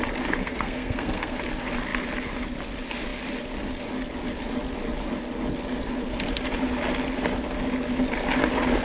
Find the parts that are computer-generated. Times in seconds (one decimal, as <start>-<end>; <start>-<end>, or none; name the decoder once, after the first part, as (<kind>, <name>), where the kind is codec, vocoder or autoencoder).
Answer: 0.4-1.4 (codec, SNAC)